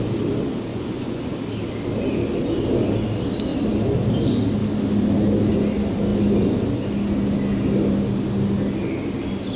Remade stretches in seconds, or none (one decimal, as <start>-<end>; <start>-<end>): 0.7-1.2